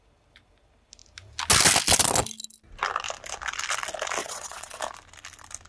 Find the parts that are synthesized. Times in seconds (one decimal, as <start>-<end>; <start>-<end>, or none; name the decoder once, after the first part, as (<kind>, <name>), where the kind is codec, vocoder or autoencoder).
4.2-4.8 (vocoder, WaveNeXt)